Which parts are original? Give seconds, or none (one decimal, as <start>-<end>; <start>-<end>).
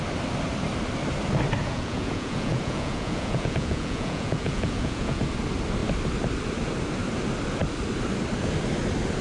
0.0-1.6; 5.2-9.2